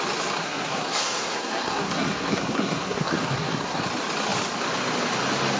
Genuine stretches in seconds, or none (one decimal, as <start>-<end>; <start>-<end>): 0.0-0.4; 3.8-5.6